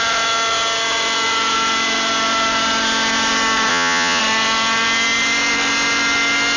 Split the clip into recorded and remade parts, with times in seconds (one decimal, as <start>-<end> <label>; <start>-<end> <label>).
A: 0.0-3.7 recorded; 3.7-4.2 remade; 4.2-6.6 recorded